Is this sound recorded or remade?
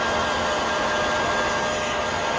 recorded